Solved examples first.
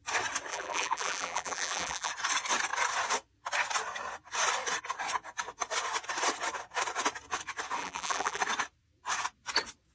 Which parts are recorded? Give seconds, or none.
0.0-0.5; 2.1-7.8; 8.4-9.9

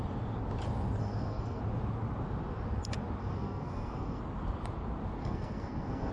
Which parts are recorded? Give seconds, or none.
0.0-1.0; 1.6-3.2; 4.2-5.2

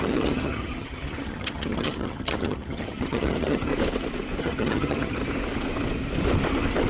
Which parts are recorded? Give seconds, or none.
3.7-4.4; 5.2-6.9

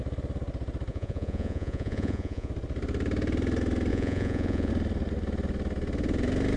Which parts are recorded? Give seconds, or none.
0.0-0.9; 2.5-3.9; 4.7-6.6

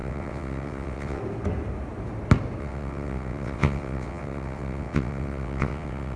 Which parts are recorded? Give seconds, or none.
1.2-2.6

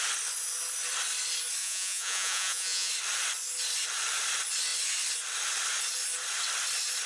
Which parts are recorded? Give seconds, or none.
0.0-1.6; 2.9-7.1

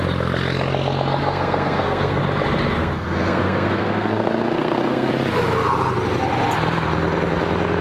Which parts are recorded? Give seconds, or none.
0.0-1.2; 2.2-2.8; 5.1-7.8